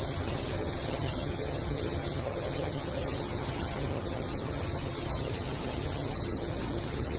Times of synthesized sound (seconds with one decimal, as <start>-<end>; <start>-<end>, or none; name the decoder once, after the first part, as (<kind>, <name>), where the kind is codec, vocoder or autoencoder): 0.0-7.2 (vocoder, HiFi-GAN)